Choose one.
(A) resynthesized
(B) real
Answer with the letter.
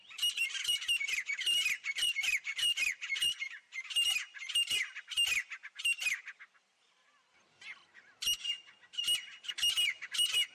A